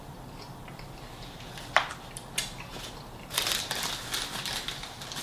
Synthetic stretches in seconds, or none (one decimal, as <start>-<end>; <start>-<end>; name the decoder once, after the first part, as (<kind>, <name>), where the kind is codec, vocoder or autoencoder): 2.7-3.9 (vocoder, BigVGAN v2)